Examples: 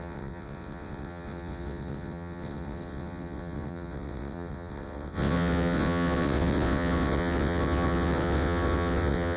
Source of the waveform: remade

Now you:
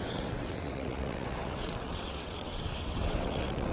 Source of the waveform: remade